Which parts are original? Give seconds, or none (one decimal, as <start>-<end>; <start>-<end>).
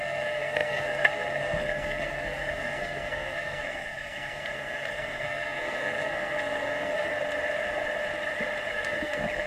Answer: 7.1-8.7